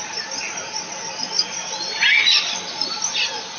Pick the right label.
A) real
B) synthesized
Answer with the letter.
A